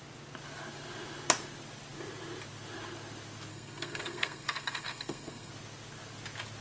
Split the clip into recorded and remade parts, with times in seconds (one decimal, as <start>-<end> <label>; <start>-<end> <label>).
0.0-3.5 recorded; 3.5-5.5 remade; 5.5-6.6 recorded